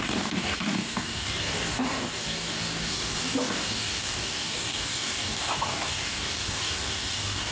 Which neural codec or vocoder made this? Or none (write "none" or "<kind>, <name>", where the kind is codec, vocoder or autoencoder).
codec, DAC